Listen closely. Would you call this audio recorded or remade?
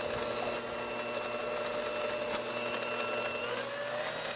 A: recorded